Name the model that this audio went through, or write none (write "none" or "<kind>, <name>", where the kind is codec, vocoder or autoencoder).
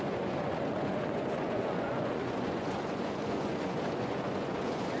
vocoder, Vocos